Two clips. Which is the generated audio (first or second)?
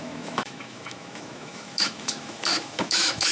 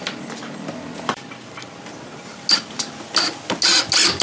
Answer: first